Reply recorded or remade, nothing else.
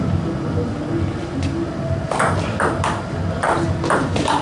recorded